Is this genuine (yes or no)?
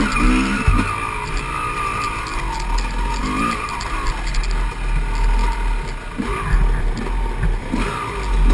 yes